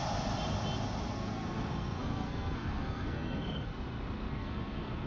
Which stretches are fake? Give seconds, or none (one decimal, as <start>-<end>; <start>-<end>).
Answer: 1.1-3.7; 4.3-5.1